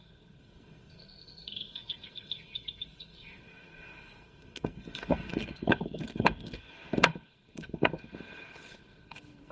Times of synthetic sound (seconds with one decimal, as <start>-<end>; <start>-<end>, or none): 0.0-9.5